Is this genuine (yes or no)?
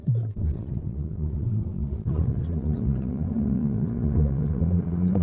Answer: no